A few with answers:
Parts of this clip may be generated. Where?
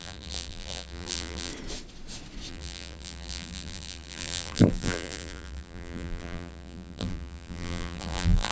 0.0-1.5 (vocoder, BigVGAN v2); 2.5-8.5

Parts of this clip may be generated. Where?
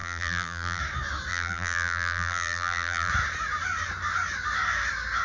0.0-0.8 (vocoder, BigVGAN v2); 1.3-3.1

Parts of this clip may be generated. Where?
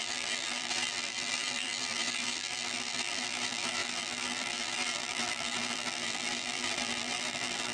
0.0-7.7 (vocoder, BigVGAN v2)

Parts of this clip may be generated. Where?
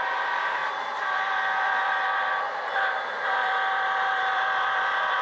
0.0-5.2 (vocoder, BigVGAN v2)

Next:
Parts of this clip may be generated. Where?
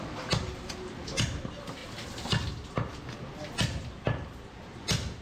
none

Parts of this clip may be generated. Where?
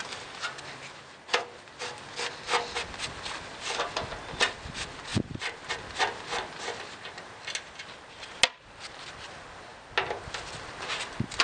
5.1-5.7 (vocoder, BigVGAN v2)